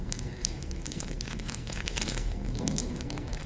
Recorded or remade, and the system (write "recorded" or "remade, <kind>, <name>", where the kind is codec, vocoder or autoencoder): remade, codec, SNAC